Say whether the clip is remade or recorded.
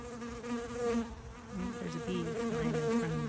recorded